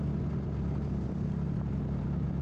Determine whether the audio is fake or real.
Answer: real